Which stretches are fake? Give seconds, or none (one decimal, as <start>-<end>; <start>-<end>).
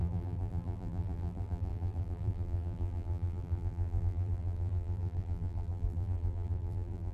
0.0-7.1